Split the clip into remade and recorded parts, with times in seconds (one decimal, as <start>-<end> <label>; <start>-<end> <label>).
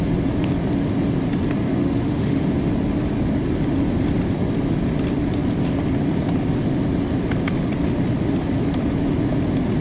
0.0-1.8 recorded; 1.8-2.4 remade; 2.4-9.8 recorded